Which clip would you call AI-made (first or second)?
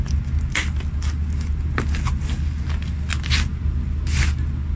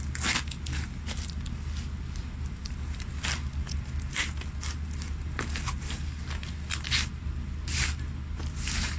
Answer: second